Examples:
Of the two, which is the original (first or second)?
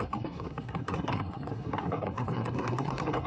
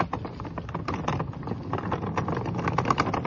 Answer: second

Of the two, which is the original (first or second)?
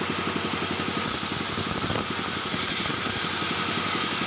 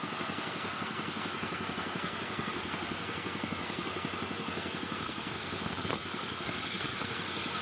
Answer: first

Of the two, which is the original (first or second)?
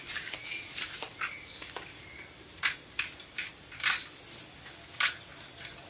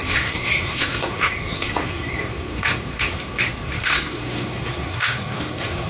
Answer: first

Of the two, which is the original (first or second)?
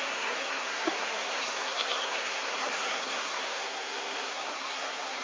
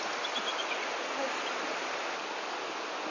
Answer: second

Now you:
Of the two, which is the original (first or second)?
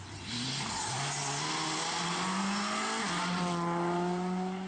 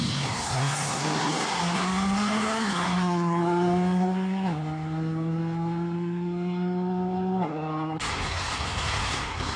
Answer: first